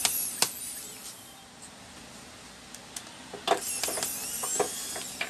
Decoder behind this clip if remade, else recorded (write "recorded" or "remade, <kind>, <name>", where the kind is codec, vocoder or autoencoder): recorded